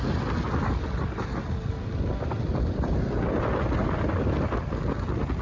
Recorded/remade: recorded